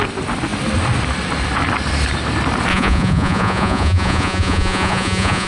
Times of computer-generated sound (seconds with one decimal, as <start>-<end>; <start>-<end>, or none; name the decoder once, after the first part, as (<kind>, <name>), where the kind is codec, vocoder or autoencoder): 2.7-5.5 (vocoder, Vocos)